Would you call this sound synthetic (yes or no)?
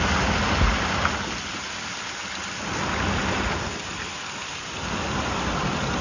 no